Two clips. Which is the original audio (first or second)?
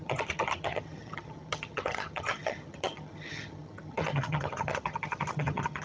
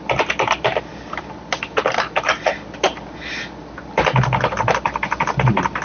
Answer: second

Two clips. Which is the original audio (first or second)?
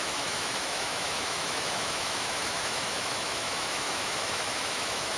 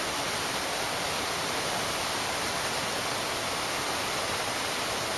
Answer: second